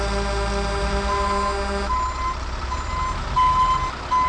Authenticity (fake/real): real